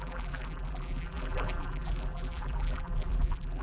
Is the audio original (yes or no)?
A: no